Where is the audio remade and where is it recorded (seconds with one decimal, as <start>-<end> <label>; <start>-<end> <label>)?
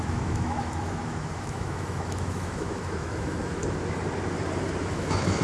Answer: 0.0-3.6 remade; 3.6-4.8 recorded; 4.8-5.4 remade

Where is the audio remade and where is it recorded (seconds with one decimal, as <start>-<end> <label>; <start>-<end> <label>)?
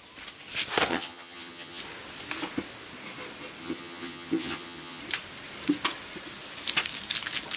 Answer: 0.0-0.9 recorded; 0.9-1.8 remade; 1.8-3.6 recorded; 3.6-5.0 remade; 5.0-7.6 recorded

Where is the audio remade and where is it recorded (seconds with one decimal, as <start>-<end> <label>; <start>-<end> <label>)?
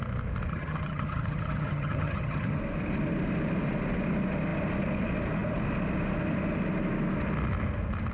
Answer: 0.0-0.5 recorded; 0.5-2.6 remade; 2.6-8.1 recorded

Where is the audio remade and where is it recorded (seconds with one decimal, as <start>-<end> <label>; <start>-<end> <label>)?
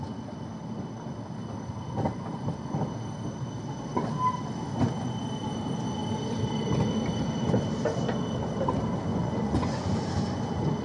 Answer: 0.0-9.1 recorded; 9.1-10.0 remade; 10.0-10.8 recorded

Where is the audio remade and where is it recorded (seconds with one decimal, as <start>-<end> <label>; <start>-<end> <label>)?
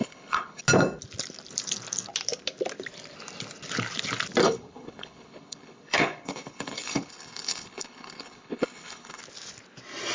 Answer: 0.0-0.6 remade; 0.6-4.4 recorded; 4.4-9.2 remade; 9.2-10.1 recorded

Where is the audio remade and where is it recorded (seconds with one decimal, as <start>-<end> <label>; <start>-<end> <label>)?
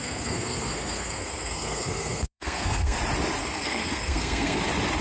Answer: 0.0-3.0 remade; 3.0-3.4 recorded; 3.4-4.6 remade; 4.6-5.0 recorded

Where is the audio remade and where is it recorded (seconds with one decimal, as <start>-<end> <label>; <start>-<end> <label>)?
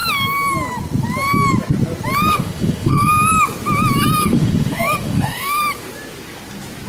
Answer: 0.0-2.3 recorded; 2.3-3.1 remade; 3.1-4.2 recorded; 4.2-5.6 remade; 5.6-6.9 recorded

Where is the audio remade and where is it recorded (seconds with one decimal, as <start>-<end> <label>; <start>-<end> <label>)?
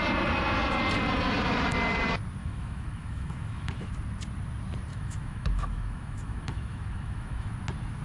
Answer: 0.0-2.4 recorded; 2.4-3.9 remade; 3.9-4.9 recorded; 4.9-7.5 remade; 7.5-8.0 recorded